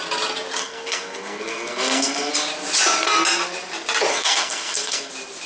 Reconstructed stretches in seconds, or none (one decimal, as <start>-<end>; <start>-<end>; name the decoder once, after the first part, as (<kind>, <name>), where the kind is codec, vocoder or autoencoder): 0.6-2.3 (codec, SNAC); 4.1-5.1